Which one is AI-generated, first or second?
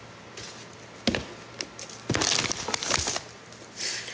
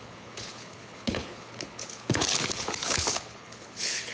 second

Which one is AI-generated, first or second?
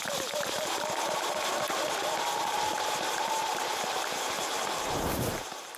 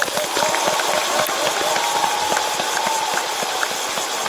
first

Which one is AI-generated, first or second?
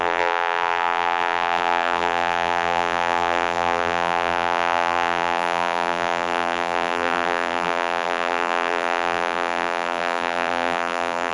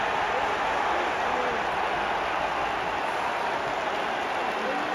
first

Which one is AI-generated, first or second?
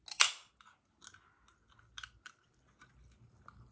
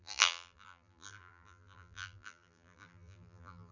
second